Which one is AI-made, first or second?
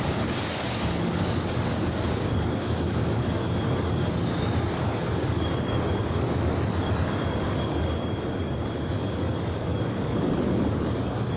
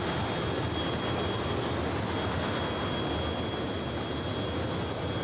first